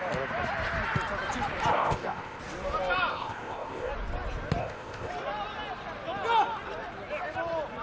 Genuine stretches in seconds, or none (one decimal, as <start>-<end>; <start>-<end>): 0.0-1.7; 2.4-3.1; 3.9-4.6; 5.1-7.8